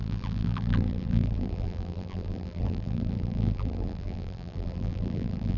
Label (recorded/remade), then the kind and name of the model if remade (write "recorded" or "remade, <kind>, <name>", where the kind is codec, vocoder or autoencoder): remade, vocoder, BigVGAN v2